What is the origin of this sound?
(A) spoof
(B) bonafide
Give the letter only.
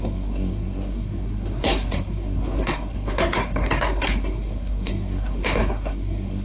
A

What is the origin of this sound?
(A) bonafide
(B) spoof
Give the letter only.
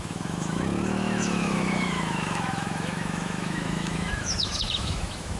B